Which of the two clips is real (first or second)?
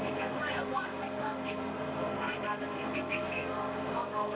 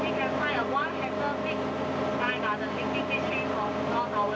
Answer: second